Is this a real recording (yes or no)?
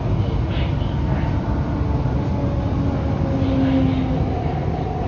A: yes